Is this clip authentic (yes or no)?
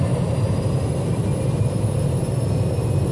yes